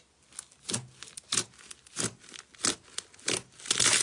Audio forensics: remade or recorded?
recorded